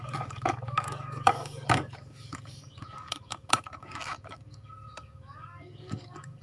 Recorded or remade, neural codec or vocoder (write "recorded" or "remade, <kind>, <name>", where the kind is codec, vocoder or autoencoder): remade, codec, DAC